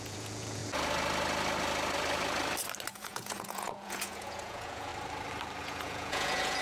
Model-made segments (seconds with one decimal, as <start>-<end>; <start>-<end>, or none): 0.0-0.6; 2.9-4.9; 5.6-6.6